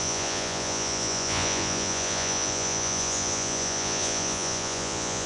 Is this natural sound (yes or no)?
no